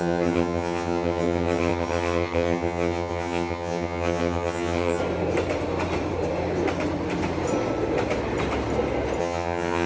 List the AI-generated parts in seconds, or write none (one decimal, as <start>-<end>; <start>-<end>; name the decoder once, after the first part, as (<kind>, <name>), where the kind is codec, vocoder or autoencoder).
0.0-5.0 (vocoder, HiFi-GAN); 9.2-9.9